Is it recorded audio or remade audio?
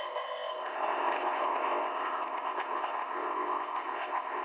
remade